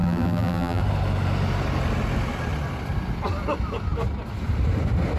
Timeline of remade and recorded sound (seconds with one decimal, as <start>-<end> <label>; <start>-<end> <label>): 0.0-0.8 remade; 0.8-5.2 recorded